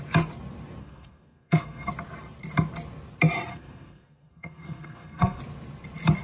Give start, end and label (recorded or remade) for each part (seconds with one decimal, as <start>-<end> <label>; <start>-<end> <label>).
0.0-0.8 recorded; 0.8-1.9 remade; 1.9-3.5 recorded; 3.5-5.4 remade; 5.4-6.2 recorded